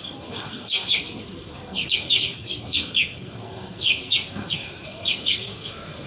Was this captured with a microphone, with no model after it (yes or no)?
no